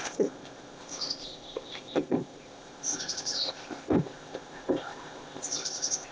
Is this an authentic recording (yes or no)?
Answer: no